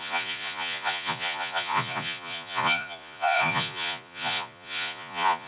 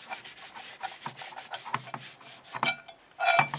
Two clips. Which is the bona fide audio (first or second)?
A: second